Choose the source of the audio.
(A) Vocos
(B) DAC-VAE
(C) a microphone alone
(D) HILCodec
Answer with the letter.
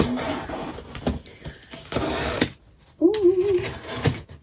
C